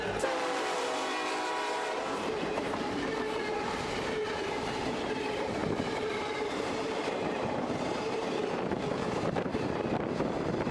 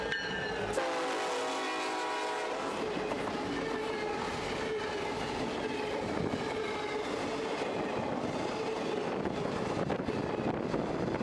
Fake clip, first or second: first